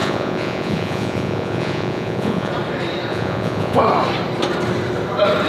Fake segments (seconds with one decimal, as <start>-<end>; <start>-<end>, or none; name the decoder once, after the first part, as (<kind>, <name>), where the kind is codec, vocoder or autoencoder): 0.0-2.5 (vocoder, Vocos); 3.1-3.8